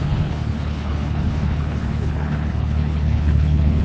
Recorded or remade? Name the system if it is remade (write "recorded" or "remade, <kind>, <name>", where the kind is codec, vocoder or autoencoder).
remade, codec, HILCodec